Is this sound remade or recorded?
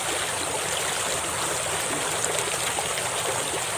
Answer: recorded